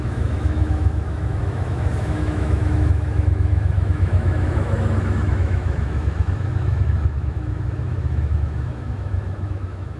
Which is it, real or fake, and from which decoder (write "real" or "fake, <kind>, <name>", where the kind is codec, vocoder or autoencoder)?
fake, autoencoder, DAC-VAE